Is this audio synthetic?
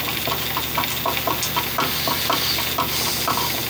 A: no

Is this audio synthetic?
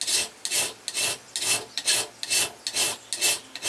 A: no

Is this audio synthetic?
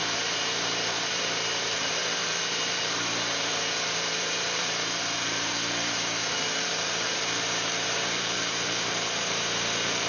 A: yes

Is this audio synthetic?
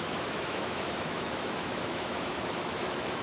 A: yes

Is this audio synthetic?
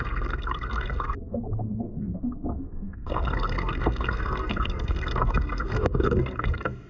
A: yes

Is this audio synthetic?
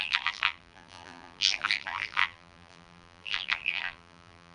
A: yes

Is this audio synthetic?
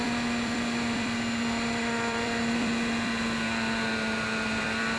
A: yes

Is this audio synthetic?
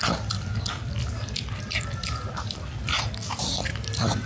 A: no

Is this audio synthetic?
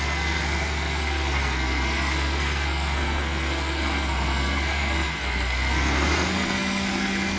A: yes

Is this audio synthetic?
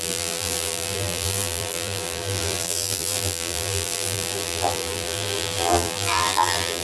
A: yes